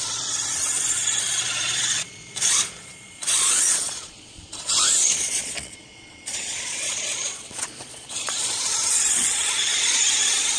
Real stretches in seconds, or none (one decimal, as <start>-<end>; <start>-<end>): none